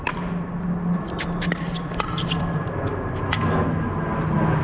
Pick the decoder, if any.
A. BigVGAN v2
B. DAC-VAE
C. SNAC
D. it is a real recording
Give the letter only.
D